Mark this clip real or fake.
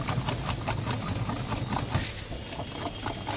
real